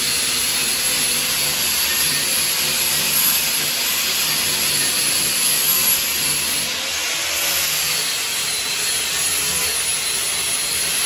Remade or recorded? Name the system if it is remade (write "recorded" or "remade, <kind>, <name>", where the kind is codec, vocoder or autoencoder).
recorded